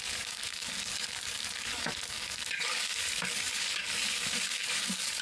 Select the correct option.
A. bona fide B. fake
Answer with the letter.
B